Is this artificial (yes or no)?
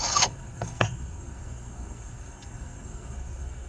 yes